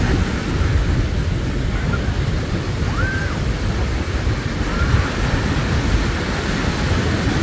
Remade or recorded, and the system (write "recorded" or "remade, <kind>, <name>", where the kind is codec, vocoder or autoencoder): recorded